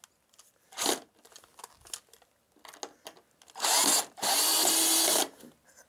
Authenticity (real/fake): real